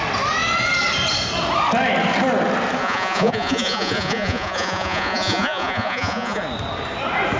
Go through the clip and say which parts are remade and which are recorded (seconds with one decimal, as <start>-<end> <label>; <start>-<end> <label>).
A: 0.0-2.8 recorded; 2.8-6.4 remade; 6.4-7.4 recorded